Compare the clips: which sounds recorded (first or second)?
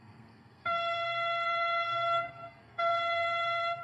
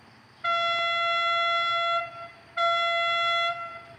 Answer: second